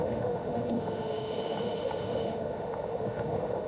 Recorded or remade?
remade